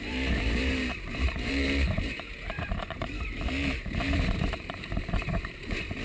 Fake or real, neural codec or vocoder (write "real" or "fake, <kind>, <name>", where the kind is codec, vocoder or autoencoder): fake, vocoder, BigVGAN v2